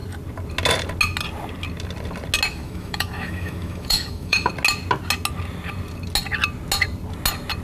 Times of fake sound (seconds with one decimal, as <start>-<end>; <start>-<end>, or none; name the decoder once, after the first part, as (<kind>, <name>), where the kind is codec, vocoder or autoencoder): 2.5-4.5 (autoencoder, DAC-VAE)